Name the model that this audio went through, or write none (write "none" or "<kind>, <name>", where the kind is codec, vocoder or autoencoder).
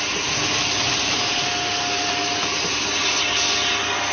none